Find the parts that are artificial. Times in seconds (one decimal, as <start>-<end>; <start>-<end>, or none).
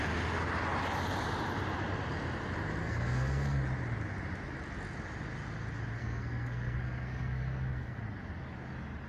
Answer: 2.8-3.6; 6.0-8.0